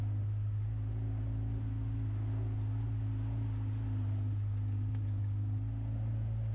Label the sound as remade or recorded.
recorded